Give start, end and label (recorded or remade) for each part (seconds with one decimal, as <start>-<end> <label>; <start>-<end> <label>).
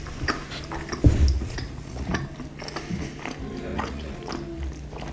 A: 0.0-1.3 recorded; 1.3-2.2 remade; 2.2-3.7 recorded; 3.7-4.2 remade; 4.2-5.1 recorded